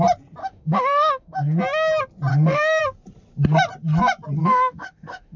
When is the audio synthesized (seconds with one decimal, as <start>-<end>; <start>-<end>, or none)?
0.4-1.6; 2.3-2.8; 4.4-5.4